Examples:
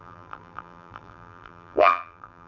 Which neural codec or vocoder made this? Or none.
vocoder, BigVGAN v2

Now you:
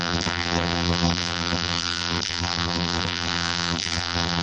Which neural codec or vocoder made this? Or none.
vocoder, BigVGAN v2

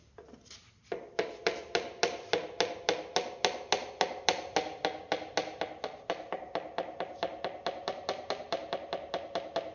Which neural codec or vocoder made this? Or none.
none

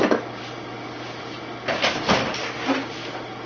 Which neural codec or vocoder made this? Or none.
none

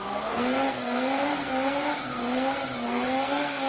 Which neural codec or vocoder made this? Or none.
codec, SNAC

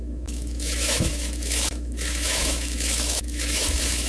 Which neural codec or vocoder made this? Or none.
autoencoder, DAC-VAE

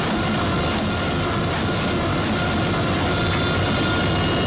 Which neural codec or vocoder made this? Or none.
none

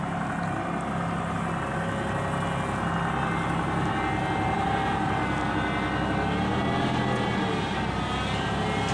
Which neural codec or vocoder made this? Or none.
none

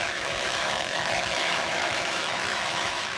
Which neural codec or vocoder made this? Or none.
autoencoder, DAC-VAE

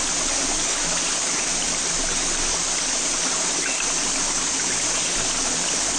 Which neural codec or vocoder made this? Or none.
none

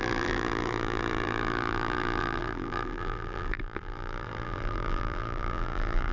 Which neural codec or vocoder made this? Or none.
vocoder, BigVGAN v2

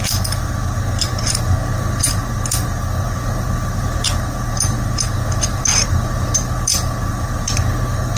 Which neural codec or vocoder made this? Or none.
vocoder, BigVGAN v2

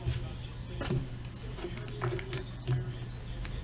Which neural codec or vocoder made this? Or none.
none